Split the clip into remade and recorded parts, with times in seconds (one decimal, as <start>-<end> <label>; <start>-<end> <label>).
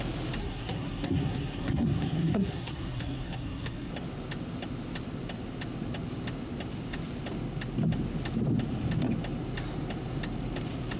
0.0-0.4 recorded; 0.4-3.9 remade; 3.9-11.0 recorded